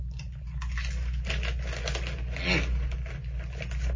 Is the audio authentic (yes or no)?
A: yes